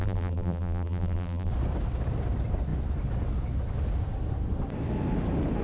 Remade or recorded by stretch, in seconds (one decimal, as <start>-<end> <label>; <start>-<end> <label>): 0.0-1.5 remade; 1.5-5.6 recorded